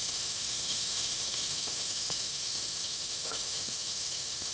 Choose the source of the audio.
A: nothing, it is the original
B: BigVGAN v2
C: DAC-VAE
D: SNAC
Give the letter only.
C